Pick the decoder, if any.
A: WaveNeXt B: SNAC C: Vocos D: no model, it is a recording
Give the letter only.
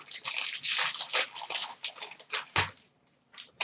D